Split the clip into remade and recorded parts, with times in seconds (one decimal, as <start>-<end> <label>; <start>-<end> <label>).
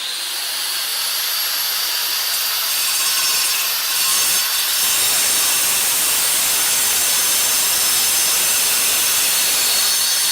0.0-10.3 recorded